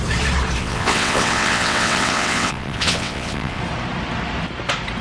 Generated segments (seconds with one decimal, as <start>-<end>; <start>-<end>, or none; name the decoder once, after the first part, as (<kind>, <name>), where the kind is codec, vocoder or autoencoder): 0.6-3.6 (vocoder, WaveNeXt)